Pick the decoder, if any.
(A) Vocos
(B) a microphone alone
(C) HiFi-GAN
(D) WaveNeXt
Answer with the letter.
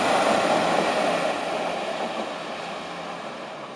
B